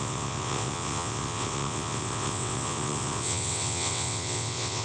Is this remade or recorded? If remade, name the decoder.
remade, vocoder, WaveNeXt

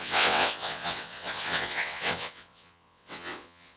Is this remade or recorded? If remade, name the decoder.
remade, vocoder, WaveNeXt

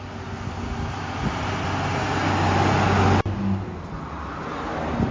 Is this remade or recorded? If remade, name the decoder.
recorded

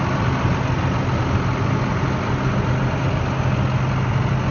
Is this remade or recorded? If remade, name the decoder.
recorded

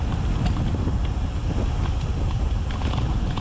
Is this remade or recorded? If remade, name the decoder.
recorded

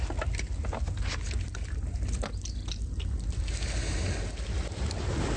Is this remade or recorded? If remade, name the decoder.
recorded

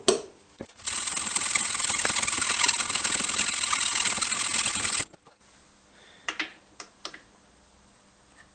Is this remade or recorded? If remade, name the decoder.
recorded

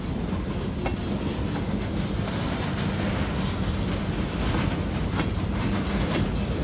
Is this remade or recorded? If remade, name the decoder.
recorded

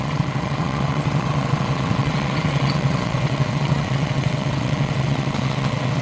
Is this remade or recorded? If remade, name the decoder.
remade, vocoder, WaveNeXt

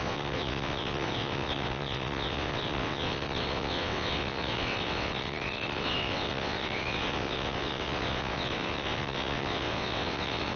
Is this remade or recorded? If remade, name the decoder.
remade, vocoder, WaveNeXt